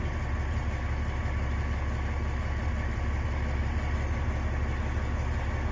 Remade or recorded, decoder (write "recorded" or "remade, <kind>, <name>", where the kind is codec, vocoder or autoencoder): recorded